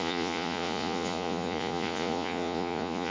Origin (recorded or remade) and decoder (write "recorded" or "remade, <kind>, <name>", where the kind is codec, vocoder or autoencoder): remade, vocoder, Vocos